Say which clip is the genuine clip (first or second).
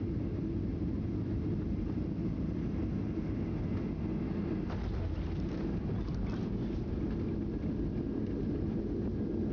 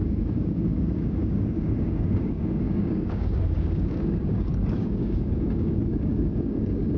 first